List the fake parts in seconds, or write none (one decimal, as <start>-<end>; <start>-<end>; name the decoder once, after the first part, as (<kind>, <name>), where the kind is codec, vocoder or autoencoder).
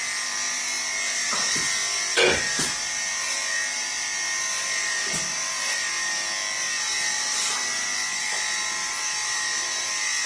none